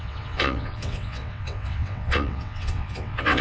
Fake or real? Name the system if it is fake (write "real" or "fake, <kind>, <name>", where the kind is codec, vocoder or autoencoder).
fake, vocoder, WaveNeXt